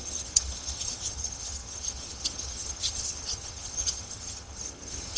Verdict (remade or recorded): remade